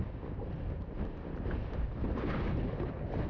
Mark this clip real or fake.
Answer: real